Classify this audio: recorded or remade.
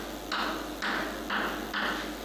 recorded